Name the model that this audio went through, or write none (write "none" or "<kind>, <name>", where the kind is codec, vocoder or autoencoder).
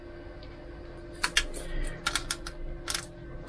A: none